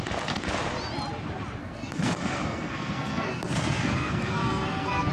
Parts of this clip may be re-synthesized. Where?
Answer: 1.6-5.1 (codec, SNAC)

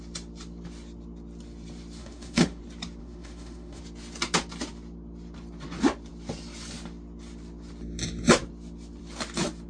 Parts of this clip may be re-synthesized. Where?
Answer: 2.0-2.6 (autoencoder, DAC-VAE); 3.0-3.8

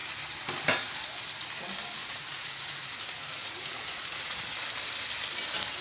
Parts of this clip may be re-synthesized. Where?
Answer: 2.0-2.9 (vocoder, Vocos); 3.4-4.5

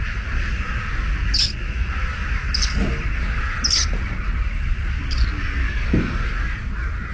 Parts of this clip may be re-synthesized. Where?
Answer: 5.4-6.3 (codec, DAC)

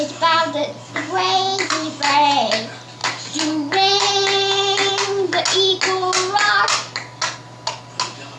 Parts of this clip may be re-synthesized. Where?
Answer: none

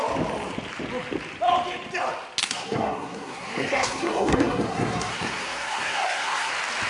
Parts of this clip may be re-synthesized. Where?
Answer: 2.4-6.5 (codec, SNAC)

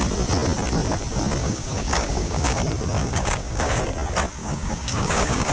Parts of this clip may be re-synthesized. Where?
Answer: 1.4-2.6 (codec, DAC); 3.0-3.8; 4.4-5.5